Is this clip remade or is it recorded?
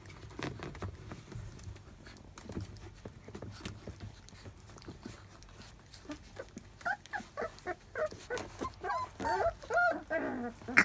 recorded